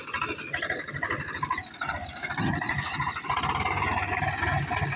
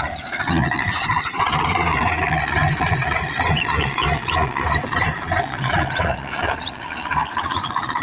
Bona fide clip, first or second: first